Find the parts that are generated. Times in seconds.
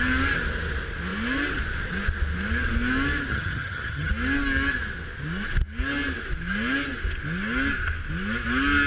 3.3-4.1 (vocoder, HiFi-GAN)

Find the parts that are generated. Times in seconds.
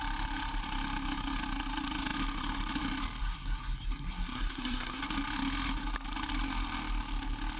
3.2-5.0 (codec, SNAC)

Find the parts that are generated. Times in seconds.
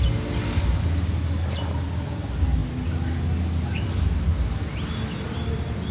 none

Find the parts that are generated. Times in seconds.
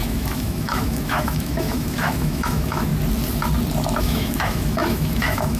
0.0-2.9 (autoencoder, DAC-VAE); 4.0-5.6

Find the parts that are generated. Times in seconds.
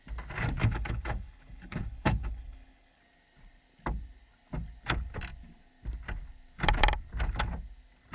0.6-3.0 (codec, HILCodec)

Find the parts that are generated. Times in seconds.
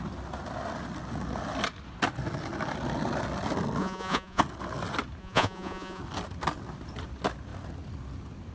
3.8-4.4 (vocoder, Vocos); 5.2-6.0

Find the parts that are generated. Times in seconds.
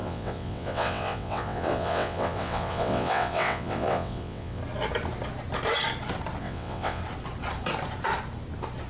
0.0-4.6 (vocoder, WaveNeXt); 6.4-7.0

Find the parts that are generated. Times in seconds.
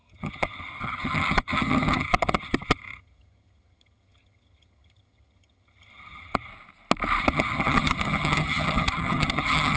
0.0-6.5 (vocoder, HiFi-GAN); 7.2-9.8